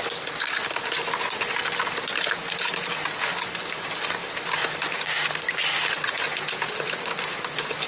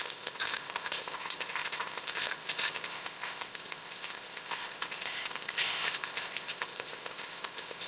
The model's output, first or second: second